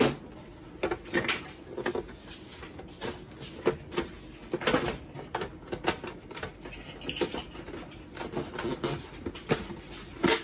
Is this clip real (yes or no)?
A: yes